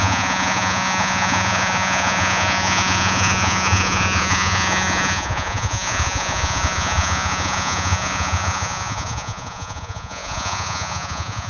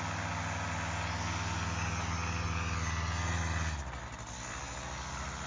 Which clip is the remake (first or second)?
first